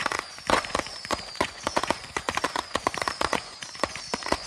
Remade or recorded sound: remade